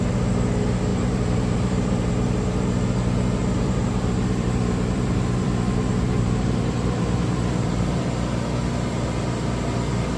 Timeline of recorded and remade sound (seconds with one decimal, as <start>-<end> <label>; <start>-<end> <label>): 0.0-0.9 recorded; 0.9-2.1 remade; 2.1-3.4 recorded; 3.4-8.0 remade; 8.0-10.2 recorded